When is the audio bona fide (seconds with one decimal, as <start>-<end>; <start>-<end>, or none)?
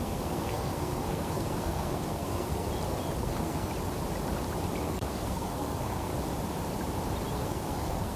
2.7-3.2; 3.7-4.8; 6.1-7.3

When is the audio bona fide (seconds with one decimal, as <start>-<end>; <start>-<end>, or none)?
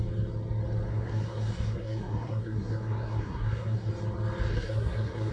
0.0-0.9; 3.9-4.5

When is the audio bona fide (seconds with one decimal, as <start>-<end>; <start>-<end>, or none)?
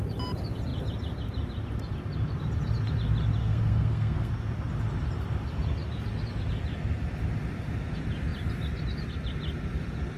0.0-3.4; 4.3-10.2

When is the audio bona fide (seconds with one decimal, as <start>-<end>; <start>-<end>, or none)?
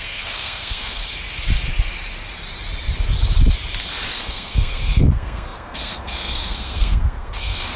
1.0-4.1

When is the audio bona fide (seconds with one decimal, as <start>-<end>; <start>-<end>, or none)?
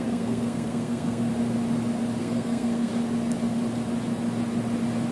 1.3-2.2; 2.9-5.1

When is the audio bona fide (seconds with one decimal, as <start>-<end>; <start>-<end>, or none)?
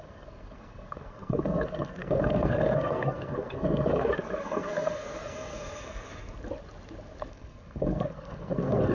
6.1-7.3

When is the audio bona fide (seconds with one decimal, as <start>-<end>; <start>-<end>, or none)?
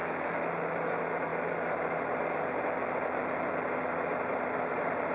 0.0-5.1